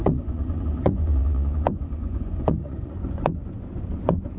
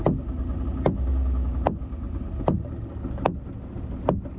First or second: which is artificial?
first